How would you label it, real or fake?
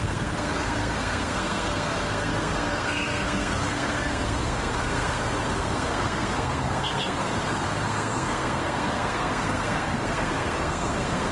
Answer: fake